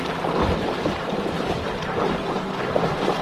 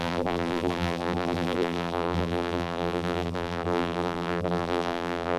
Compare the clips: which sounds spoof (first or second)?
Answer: second